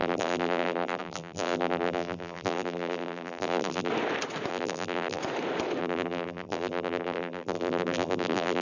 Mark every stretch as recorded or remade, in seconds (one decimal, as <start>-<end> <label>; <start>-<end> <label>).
0.0-3.9 remade; 3.9-4.5 recorded; 4.5-5.2 remade; 5.2-5.8 recorded; 5.8-8.6 remade